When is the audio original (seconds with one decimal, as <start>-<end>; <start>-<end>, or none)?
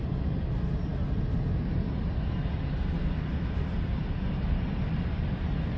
0.0-5.8